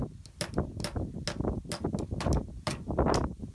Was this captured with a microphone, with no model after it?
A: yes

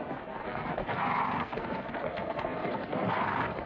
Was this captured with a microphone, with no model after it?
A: no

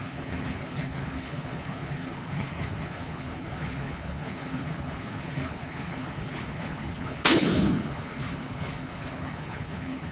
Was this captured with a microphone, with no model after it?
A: no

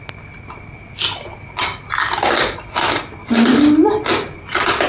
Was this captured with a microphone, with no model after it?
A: yes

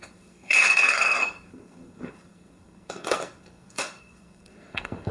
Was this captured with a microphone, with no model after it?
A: no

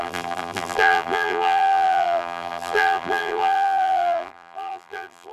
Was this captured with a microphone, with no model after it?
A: no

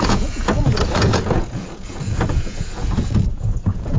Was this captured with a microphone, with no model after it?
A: no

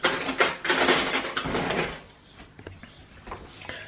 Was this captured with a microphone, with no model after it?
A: yes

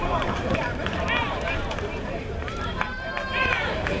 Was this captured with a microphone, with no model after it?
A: no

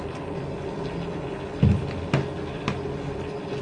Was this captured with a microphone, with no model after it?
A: yes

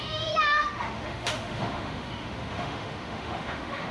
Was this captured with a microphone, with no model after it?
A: no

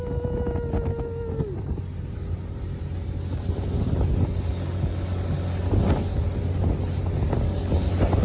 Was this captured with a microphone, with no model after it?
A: yes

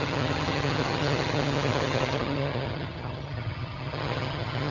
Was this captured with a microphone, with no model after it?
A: no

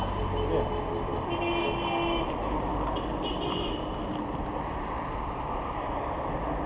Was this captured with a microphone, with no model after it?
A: yes